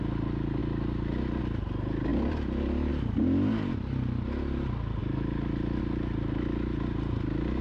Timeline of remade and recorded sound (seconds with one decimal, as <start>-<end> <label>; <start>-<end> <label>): 0.0-7.6 recorded